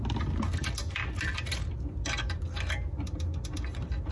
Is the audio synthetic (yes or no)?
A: no